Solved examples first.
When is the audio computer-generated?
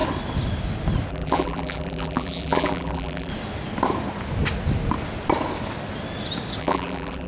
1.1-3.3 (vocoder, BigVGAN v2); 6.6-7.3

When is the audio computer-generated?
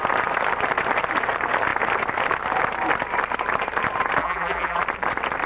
4.2-4.8 (vocoder, BigVGAN v2)